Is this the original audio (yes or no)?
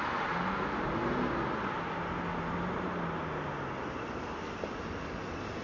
yes